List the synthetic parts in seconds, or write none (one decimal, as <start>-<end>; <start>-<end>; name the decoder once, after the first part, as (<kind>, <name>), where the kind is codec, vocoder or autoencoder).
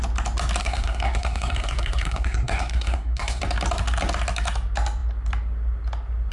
0.6-3.4 (codec, SNAC)